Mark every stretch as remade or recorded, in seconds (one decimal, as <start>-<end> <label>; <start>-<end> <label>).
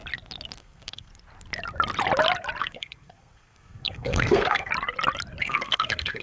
0.0-0.6 recorded; 0.6-1.1 remade; 1.1-2.6 recorded; 2.6-4.7 remade; 4.7-5.4 recorded; 5.4-6.2 remade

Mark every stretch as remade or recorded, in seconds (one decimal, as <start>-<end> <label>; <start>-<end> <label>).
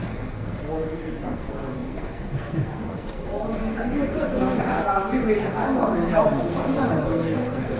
0.0-7.8 remade